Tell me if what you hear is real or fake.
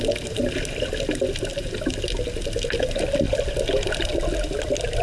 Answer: real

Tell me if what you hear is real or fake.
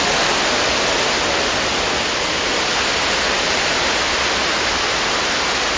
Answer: real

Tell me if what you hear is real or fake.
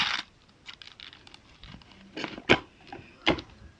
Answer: real